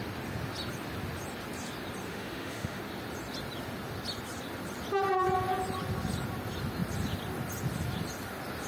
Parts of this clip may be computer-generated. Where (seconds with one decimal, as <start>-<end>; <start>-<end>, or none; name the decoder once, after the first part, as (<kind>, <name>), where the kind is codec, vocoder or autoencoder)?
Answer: 2.1-2.8 (autoencoder, DAC-VAE)